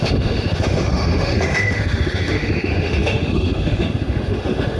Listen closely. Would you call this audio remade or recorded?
remade